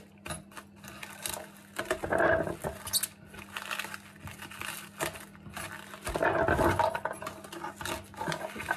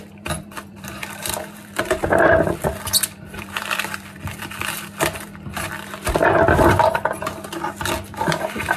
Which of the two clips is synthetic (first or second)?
second